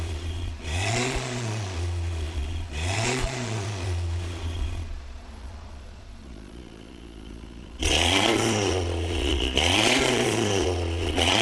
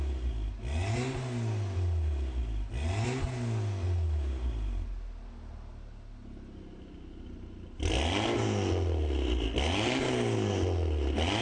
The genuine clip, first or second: second